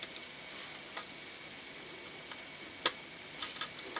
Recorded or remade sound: recorded